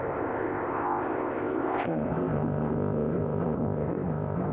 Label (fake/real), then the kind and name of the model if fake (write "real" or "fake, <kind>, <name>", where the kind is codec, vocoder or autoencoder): fake, codec, ZipCodec